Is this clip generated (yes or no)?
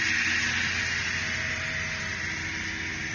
no